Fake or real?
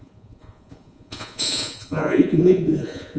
fake